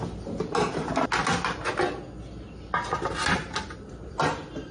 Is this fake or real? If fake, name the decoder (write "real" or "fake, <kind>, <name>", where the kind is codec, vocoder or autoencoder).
real